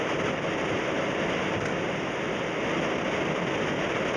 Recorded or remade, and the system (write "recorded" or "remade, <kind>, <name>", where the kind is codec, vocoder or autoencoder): recorded